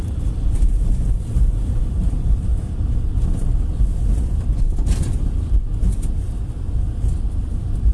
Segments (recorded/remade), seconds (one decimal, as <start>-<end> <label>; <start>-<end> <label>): 0.0-2.5 remade; 2.5-7.2 recorded; 7.2-7.9 remade